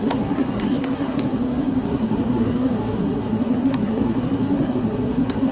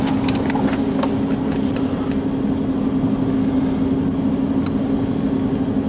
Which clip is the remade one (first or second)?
first